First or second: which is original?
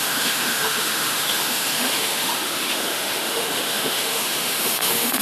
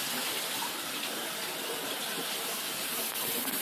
second